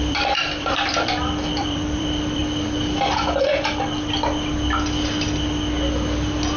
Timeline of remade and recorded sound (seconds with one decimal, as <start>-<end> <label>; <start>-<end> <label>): 0.0-2.4 remade; 2.4-6.6 recorded